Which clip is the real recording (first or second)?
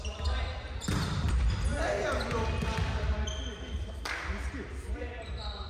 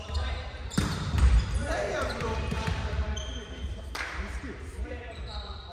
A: first